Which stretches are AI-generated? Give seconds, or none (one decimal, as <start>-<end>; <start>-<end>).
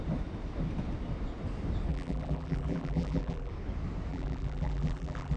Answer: 1.9-3.5; 4.1-5.4